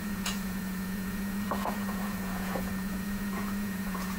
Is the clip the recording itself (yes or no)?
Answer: no